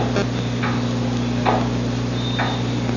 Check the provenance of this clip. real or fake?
real